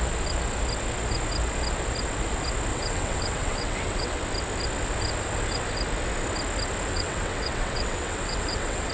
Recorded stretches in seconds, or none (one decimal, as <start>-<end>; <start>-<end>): 0.0-2.7; 4.2-6.9